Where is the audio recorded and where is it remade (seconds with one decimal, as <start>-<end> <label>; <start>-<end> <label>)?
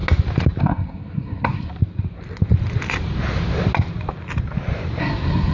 0.0-0.6 recorded; 0.6-1.7 remade; 1.7-5.0 recorded; 5.0-5.5 remade